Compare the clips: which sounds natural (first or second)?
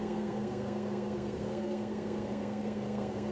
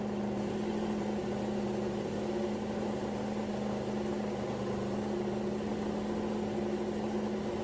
second